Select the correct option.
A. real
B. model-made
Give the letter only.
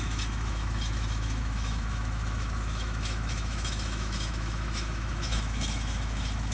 B